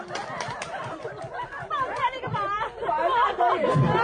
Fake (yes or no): no